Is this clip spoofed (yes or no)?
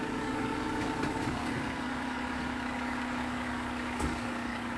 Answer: yes